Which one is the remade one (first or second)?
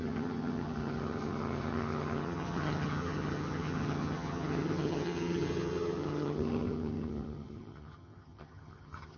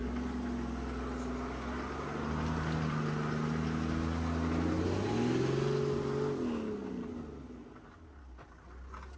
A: first